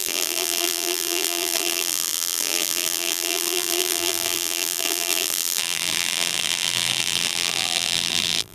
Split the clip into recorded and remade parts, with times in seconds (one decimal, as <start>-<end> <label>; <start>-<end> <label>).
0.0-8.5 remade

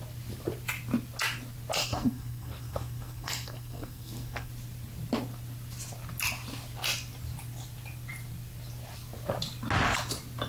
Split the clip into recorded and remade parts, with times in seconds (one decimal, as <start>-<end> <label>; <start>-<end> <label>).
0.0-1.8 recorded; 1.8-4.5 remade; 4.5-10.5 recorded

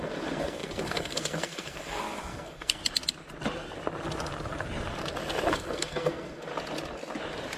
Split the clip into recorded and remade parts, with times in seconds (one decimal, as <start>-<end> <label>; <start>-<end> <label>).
0.0-2.8 remade; 2.8-5.5 recorded; 5.5-6.5 remade; 6.5-7.6 recorded

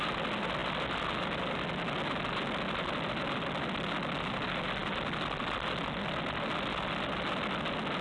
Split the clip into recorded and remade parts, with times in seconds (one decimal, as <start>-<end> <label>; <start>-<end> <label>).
0.0-8.0 recorded

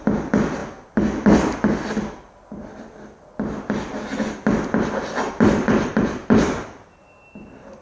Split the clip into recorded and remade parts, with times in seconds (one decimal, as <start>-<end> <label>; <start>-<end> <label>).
0.0-7.8 recorded

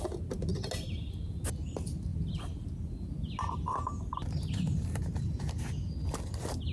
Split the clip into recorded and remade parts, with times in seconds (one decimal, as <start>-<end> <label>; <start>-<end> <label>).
0.0-6.7 recorded